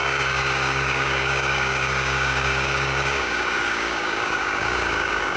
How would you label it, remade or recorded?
remade